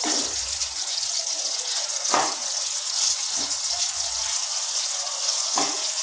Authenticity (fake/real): fake